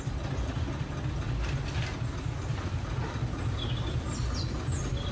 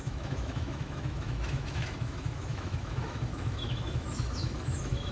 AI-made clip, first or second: second